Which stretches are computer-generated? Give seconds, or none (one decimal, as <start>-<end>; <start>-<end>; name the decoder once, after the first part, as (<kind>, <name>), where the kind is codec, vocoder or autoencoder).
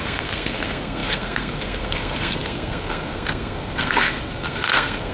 0.0-5.1 (codec, SNAC)